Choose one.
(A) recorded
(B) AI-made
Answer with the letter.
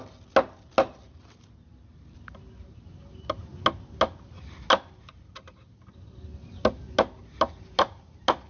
A